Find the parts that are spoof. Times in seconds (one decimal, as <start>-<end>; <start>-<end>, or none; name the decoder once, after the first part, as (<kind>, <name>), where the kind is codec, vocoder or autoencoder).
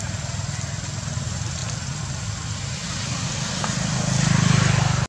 none